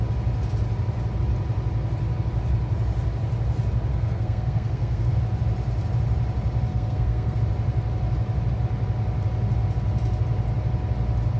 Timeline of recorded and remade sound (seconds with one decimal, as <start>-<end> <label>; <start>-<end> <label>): 0.0-3.9 recorded; 3.9-5.2 remade; 5.2-6.7 recorded; 6.7-7.4 remade; 7.4-11.4 recorded